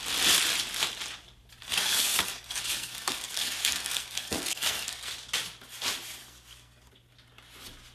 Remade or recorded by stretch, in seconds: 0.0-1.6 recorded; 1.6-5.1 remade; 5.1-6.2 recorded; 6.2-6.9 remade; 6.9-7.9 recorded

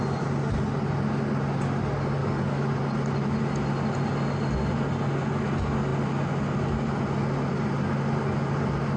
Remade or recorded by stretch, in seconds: 0.0-2.2 recorded; 2.2-2.7 remade; 2.7-9.0 recorded

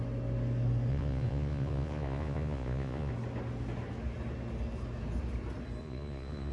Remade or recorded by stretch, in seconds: 0.0-0.9 recorded; 0.9-3.1 remade; 3.1-5.8 recorded; 5.8-6.5 remade

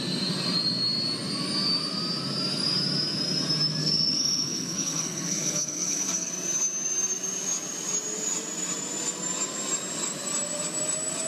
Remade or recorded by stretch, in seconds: 0.0-3.8 recorded; 3.8-6.3 remade; 6.3-11.3 recorded